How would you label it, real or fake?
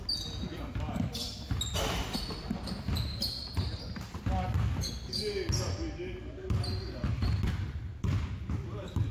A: real